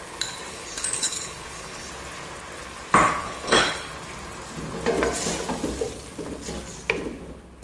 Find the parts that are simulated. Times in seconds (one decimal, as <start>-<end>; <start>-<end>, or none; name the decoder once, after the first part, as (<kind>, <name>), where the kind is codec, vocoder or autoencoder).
0.5-1.9 (codec, HILCodec); 3.2-3.9